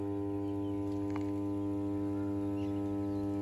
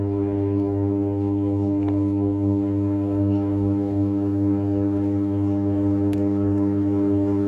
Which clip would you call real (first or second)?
first